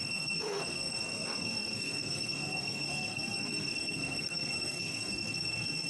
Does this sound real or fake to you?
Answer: fake